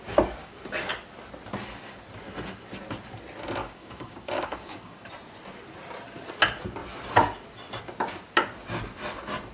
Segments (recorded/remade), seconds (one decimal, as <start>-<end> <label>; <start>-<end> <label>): 0.0-0.4 recorded; 0.4-0.9 remade; 0.9-3.6 recorded; 3.6-5.1 remade; 5.1-9.5 recorded